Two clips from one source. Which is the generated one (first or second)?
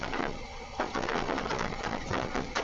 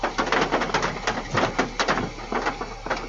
first